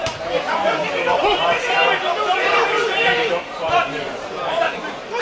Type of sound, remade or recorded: remade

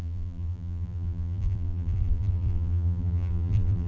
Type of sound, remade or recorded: remade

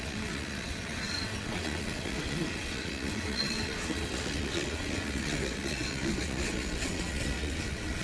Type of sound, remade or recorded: remade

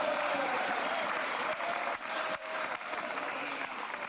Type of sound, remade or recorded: remade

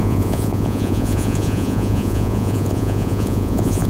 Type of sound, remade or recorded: remade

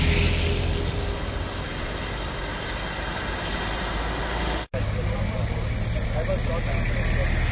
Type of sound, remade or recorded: recorded